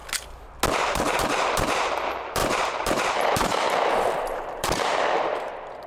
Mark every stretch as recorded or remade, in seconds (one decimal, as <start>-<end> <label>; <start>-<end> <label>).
0.0-0.7 recorded; 0.7-5.9 remade

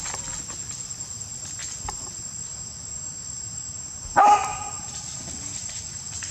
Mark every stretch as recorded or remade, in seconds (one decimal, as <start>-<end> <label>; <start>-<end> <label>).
0.0-1.6 recorded; 1.6-5.2 remade; 5.2-6.3 recorded